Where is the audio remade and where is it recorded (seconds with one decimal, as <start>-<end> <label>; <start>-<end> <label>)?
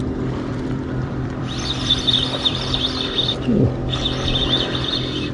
0.0-0.5 recorded; 0.5-3.7 remade; 3.7-5.3 recorded